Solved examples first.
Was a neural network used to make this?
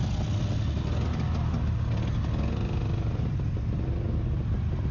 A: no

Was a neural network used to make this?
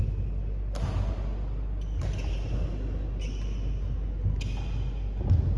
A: no